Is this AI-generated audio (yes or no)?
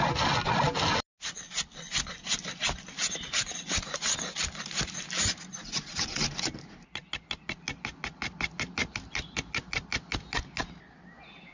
no